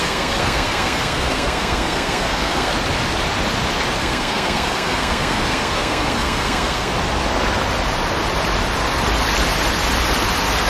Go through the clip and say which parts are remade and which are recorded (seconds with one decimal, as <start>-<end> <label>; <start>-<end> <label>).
0.0-2.7 remade; 2.7-4.0 recorded; 4.0-6.9 remade; 6.9-10.7 recorded